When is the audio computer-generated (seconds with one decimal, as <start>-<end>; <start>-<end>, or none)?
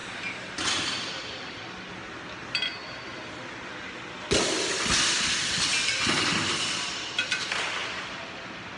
none